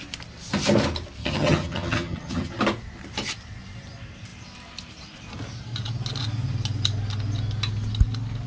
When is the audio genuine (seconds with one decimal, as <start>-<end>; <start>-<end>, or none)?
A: 0.0-1.2; 2.5-8.5